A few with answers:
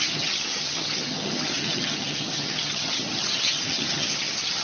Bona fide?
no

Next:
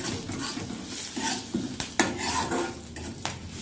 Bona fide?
yes